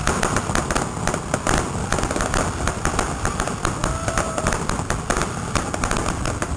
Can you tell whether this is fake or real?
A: real